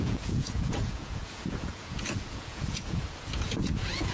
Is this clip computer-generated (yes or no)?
yes